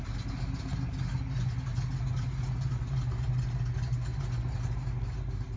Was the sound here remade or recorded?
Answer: recorded